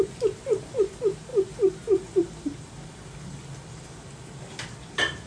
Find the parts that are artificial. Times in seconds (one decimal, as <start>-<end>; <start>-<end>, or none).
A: none